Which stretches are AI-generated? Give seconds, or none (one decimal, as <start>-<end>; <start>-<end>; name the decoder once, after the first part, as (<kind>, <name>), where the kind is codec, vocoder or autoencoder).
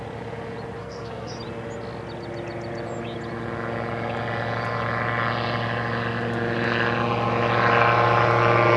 0.8-1.3 (codec, SNAC)